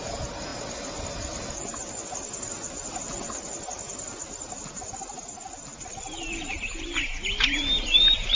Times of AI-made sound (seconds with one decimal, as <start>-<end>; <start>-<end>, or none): none